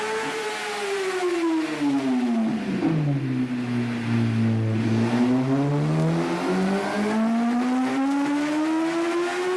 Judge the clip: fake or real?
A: real